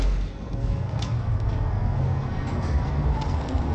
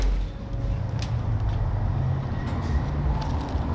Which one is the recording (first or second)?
second